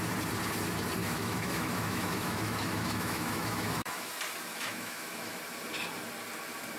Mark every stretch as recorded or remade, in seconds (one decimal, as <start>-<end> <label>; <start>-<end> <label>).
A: 0.0-1.0 recorded; 1.0-4.1 remade; 4.1-4.5 recorded; 4.5-5.4 remade; 5.4-6.8 recorded